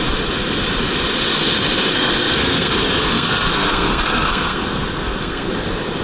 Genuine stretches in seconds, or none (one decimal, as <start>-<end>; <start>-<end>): 0.0-1.9; 5.5-6.0